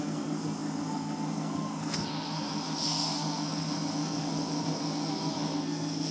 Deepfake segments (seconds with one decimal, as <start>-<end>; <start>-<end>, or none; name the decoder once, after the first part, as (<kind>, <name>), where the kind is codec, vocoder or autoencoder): 0.0-6.1 (codec, SNAC)